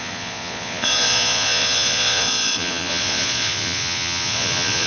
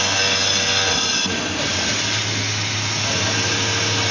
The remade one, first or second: first